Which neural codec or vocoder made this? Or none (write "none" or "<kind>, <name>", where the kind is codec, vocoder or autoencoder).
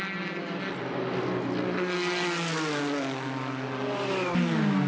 none